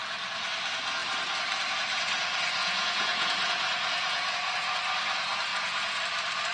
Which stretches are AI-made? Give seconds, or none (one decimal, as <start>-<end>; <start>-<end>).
2.6-4.3; 5.5-6.0